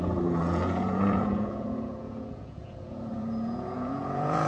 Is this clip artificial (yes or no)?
yes